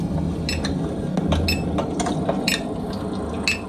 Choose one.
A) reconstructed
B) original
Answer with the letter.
B